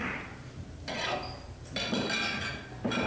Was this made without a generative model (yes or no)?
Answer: yes